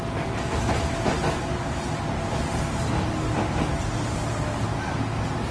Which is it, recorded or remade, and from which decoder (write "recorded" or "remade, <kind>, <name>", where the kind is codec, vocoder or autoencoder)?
recorded